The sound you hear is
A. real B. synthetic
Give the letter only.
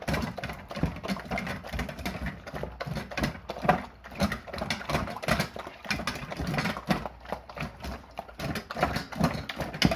A